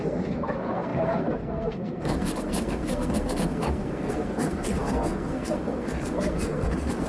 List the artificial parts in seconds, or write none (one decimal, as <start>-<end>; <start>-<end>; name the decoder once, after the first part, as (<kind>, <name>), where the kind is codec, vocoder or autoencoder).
0.0-7.1 (codec, SNAC)